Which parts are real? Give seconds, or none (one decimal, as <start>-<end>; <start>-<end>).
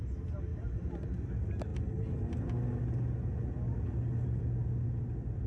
0.0-0.5; 1.2-5.5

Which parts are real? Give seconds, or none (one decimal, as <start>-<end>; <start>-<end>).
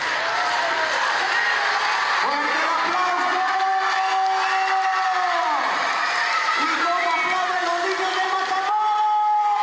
0.0-5.4; 6.8-7.5; 8.7-9.6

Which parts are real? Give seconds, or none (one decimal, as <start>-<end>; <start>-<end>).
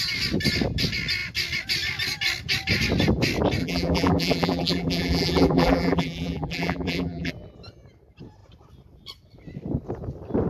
0.0-3.6; 7.3-10.5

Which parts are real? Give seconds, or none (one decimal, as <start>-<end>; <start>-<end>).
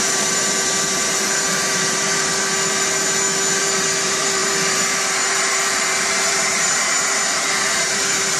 2.3-3.6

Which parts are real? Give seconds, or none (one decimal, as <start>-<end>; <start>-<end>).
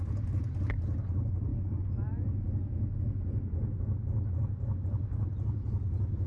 1.5-4.8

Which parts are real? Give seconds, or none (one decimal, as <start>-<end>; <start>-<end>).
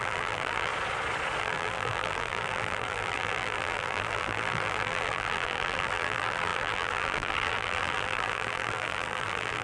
0.7-1.4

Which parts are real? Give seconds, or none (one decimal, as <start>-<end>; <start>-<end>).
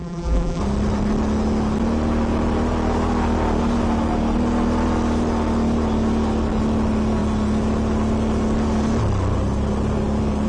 0.6-10.5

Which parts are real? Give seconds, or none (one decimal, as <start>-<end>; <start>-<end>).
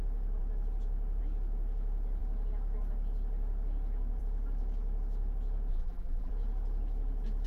0.0-5.7; 6.3-7.5